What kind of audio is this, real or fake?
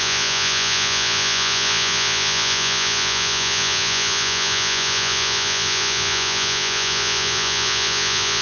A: fake